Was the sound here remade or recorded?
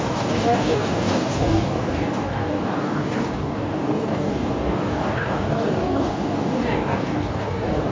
remade